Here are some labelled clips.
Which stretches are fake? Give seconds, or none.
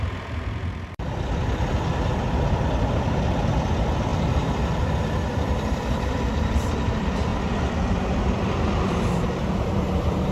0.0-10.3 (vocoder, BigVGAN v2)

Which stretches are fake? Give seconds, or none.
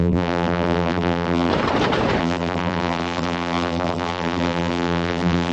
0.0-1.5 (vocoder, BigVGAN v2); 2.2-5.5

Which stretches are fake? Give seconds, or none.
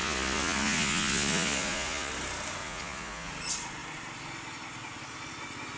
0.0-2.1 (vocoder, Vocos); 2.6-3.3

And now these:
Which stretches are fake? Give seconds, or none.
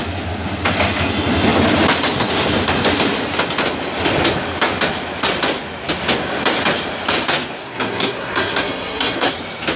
7.6-9.3 (codec, SNAC)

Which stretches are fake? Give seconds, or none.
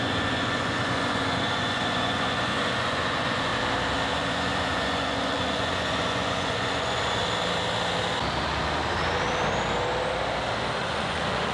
0.0-3.5 (vocoder, Vocos); 4.1-7.2; 10.8-11.5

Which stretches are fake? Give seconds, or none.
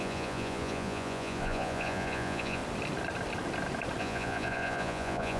0.0-2.6 (vocoder, Vocos); 4.0-5.4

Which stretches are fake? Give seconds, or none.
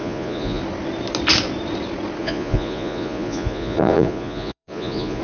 0.0-0.6 (vocoder, Vocos); 2.2-5.2